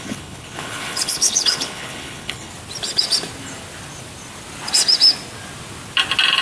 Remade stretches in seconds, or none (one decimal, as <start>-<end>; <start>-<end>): 0.0-2.5